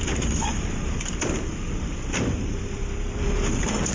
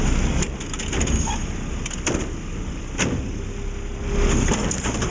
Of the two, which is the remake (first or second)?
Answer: first